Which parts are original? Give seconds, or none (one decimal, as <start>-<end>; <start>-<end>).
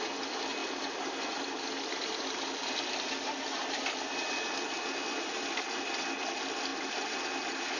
0.0-7.8